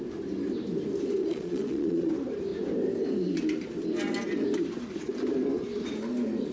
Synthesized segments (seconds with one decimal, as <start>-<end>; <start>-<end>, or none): 1.2-2.1